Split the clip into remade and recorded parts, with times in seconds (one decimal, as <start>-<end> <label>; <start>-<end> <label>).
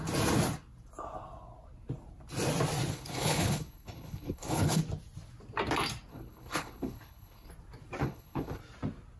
0.0-2.9 recorded; 2.9-4.8 remade; 4.8-6.1 recorded; 6.1-7.5 remade; 7.5-8.0 recorded; 8.0-8.6 remade; 8.6-9.2 recorded